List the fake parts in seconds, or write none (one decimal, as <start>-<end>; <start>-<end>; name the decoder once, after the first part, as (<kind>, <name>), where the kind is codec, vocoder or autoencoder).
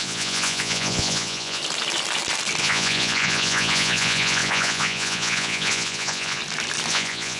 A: 0.0-1.6 (vocoder, Vocos); 2.6-6.4; 6.9-7.4